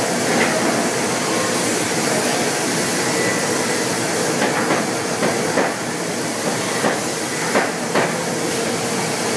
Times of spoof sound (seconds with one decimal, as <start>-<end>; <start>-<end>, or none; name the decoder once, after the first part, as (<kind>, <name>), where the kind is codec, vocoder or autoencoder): none